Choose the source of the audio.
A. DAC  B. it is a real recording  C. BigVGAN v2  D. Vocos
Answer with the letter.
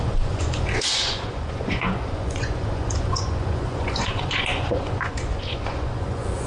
D